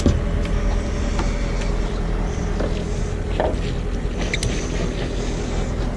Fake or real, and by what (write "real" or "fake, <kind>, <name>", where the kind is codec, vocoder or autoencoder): real